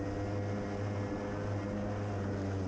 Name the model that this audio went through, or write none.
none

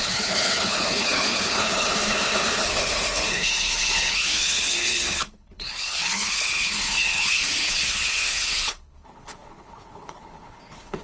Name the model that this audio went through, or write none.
codec, HILCodec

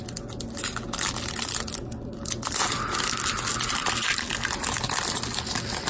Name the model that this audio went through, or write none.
none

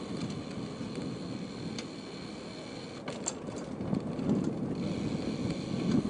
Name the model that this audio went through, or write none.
none